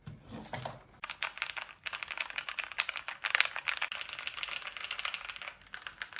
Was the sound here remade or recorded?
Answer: recorded